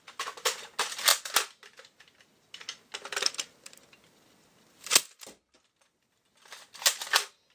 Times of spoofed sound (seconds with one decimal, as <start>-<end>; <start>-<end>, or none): none